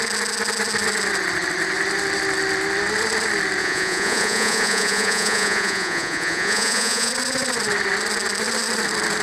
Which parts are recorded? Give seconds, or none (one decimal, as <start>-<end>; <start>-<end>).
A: 0.0-3.6; 7.1-9.2